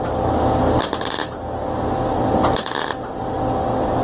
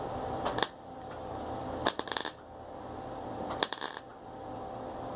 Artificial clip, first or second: second